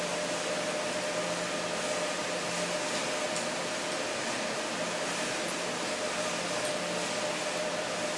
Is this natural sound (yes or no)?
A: yes